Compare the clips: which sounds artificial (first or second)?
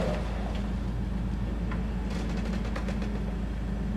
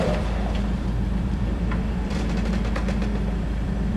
second